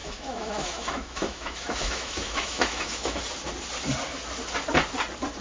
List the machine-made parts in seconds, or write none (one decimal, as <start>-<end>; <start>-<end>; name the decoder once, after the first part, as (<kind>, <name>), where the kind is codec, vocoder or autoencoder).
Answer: 0.0-3.2 (autoencoder, DAC-VAE)